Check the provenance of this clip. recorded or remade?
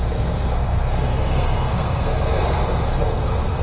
remade